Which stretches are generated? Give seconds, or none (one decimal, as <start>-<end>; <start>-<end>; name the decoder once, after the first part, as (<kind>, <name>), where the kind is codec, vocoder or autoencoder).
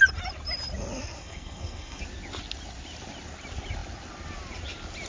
1.2-2.0 (codec, SNAC)